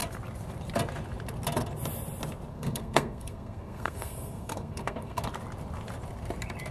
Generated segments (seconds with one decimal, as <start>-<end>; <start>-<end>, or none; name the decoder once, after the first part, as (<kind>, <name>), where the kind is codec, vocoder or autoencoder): 2.5-5.2 (codec, SNAC)